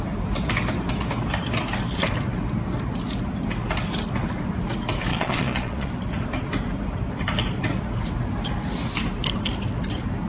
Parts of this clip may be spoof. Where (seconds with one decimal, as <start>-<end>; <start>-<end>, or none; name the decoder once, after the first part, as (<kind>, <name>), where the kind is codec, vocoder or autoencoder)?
5.1-5.9 (vocoder, Vocos)